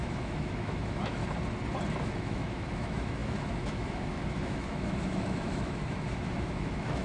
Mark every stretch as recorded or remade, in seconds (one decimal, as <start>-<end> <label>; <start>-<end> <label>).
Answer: 0.0-1.2 remade; 1.2-2.0 recorded; 2.0-7.0 remade